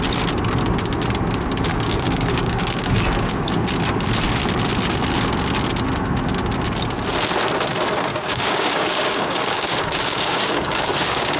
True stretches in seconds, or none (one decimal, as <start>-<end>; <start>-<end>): 0.0-1.7; 3.5-8.1